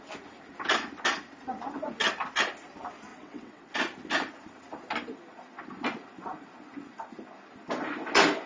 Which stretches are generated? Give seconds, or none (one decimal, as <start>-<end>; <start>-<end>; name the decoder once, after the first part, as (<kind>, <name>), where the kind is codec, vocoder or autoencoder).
3.1-3.7 (vocoder, WaveNeXt)